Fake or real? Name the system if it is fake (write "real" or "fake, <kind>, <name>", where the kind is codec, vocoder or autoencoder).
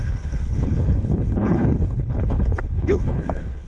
fake, codec, HILCodec